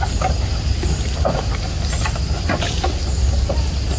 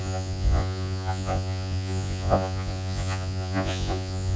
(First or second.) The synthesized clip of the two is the second